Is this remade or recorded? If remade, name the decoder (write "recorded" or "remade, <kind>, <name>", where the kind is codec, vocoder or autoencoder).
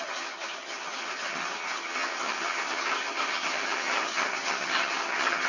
remade, vocoder, HiFi-GAN